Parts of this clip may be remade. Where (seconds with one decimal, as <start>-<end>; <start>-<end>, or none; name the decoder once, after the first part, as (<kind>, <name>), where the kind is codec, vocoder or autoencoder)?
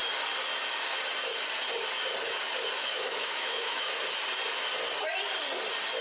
2.8-4.0 (autoencoder, DAC-VAE)